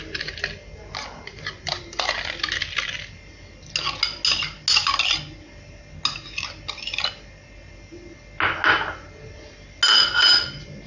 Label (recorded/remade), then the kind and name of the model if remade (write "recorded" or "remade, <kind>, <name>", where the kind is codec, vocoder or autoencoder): recorded